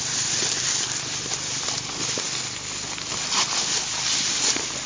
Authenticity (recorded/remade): recorded